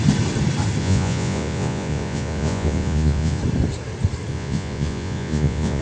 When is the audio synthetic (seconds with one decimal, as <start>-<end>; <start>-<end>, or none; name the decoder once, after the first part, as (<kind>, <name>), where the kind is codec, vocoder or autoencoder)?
0.8-3.4 (vocoder, Vocos); 4.3-5.8

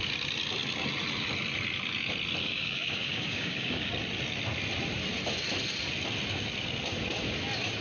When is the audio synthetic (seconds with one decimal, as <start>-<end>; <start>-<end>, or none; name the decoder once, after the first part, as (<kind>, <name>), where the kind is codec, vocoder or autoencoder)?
2.4-3.9 (codec, DAC)

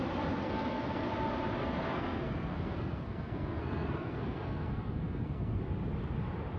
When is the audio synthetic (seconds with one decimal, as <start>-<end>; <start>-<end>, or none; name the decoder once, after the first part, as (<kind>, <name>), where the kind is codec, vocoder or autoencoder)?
0.4-1.1 (codec, SNAC); 1.6-5.6